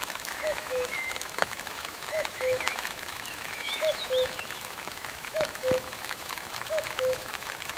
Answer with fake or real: fake